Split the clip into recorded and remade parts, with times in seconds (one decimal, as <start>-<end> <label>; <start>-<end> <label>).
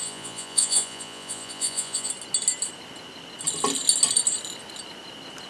0.0-2.1 remade; 2.1-5.5 recorded